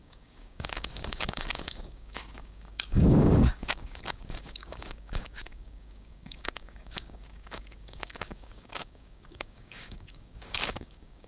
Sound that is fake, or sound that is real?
fake